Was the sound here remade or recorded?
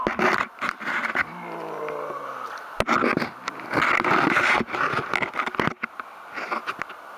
recorded